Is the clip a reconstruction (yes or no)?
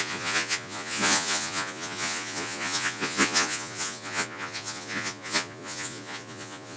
yes